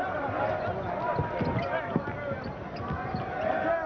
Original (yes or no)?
yes